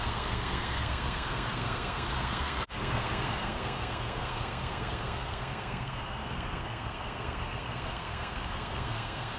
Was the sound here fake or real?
fake